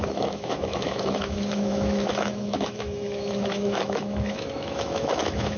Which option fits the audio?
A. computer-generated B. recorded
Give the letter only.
A